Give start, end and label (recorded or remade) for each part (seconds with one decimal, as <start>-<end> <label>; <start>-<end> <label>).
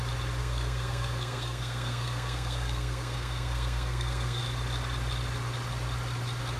0.0-0.4 recorded; 0.4-4.4 remade; 4.4-6.6 recorded